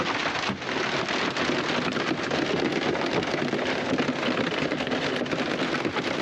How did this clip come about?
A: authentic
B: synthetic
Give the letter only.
A